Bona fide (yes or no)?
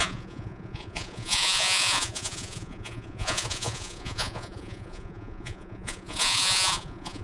no